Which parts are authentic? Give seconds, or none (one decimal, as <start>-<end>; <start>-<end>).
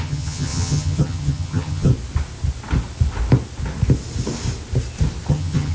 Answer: 1.9-5.3